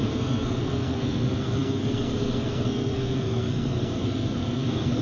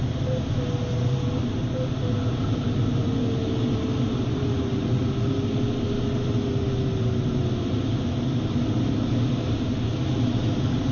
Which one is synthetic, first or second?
first